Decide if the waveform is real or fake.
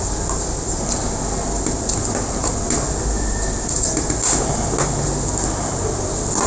real